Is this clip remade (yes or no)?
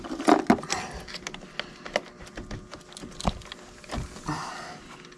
no